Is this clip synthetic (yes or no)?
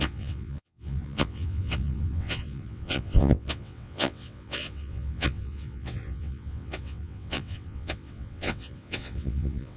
yes